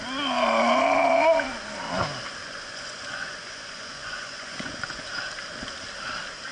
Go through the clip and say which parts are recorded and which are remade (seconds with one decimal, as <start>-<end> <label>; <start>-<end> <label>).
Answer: 0.0-2.4 recorded; 2.4-5.2 remade; 5.2-6.5 recorded